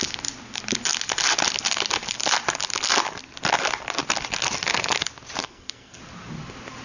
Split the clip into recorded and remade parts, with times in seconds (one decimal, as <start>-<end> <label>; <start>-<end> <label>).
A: 0.0-5.4 recorded; 5.4-6.0 remade; 6.0-6.8 recorded

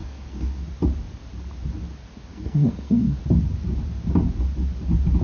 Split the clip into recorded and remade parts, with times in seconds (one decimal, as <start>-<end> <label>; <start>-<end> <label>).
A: 0.0-0.6 remade; 0.6-2.3 recorded; 2.3-3.2 remade; 3.2-5.2 recorded

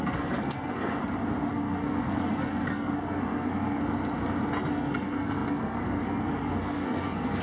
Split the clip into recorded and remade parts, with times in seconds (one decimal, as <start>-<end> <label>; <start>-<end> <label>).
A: 0.0-1.0 remade; 1.0-1.5 recorded; 1.5-3.8 remade; 3.8-4.7 recorded; 4.7-7.4 remade

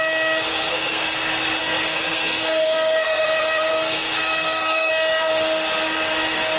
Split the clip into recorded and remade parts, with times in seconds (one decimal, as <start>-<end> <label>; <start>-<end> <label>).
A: 0.0-0.5 recorded; 0.5-1.1 remade; 1.1-1.6 recorded; 1.6-3.2 remade; 3.2-3.7 recorded; 3.7-4.9 remade; 4.9-6.6 recorded

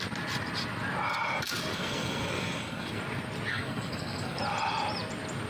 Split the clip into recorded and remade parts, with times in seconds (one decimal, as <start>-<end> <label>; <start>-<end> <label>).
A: 0.0-1.7 recorded; 1.7-3.0 remade; 3.0-3.5 recorded; 3.5-4.4 remade; 4.4-5.5 recorded

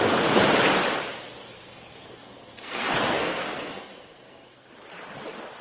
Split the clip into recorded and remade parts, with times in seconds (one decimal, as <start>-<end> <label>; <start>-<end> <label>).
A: 0.0-1.4 recorded; 1.4-4.7 remade; 4.7-5.6 recorded

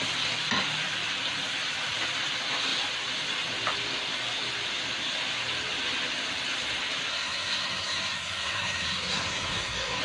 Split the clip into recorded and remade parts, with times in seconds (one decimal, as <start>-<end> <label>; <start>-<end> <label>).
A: 0.0-7.1 recorded; 7.1-10.0 remade